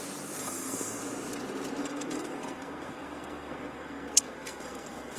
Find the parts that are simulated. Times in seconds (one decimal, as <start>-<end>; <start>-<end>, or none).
0.4-1.0; 1.8-5.2